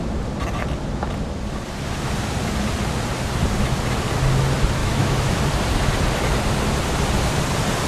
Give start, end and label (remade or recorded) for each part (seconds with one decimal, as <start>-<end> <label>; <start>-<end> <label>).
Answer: 0.0-4.8 recorded; 4.8-5.4 remade; 5.4-7.9 recorded